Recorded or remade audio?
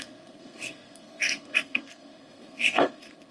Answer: remade